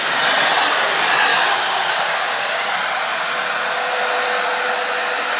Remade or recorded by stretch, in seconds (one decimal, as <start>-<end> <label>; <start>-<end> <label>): 0.0-1.3 recorded; 1.3-2.7 remade; 2.7-5.4 recorded

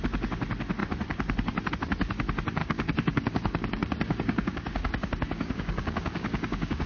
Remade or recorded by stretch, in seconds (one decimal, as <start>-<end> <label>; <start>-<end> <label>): 0.0-2.6 recorded; 2.6-6.9 remade